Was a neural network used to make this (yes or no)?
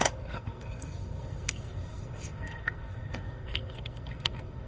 yes